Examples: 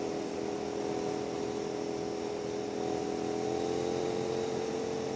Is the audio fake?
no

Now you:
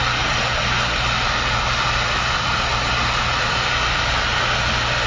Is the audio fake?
no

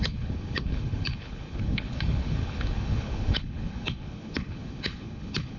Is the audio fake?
yes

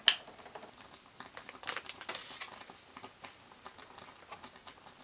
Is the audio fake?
no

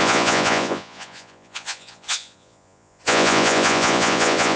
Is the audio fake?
yes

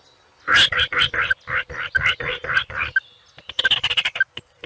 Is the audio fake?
no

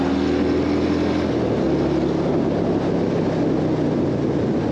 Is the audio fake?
no